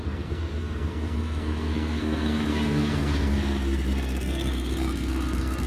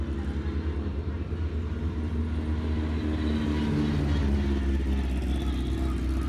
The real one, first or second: second